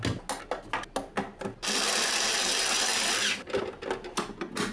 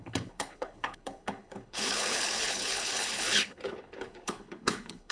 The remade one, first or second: second